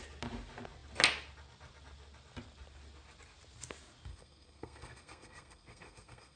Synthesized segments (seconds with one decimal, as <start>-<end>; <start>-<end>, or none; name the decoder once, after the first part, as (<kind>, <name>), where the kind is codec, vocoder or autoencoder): 4.1-6.4 (codec, SNAC)